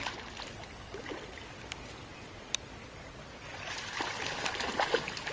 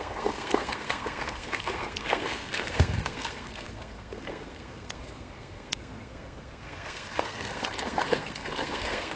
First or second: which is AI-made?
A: second